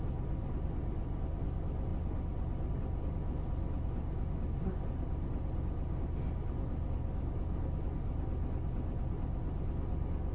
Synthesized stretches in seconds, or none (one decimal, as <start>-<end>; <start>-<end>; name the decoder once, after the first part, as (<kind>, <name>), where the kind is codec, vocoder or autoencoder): none